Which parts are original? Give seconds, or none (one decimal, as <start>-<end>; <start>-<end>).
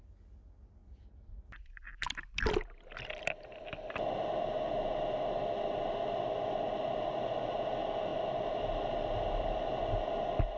0.0-0.8; 4.0-8.1; 9.7-10.6